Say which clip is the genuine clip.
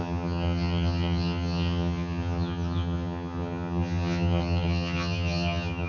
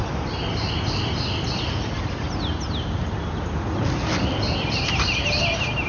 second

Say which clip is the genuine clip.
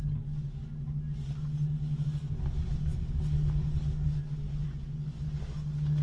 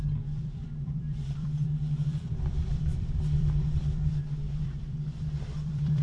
first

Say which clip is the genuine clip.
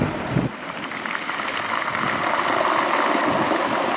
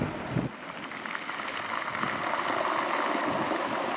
second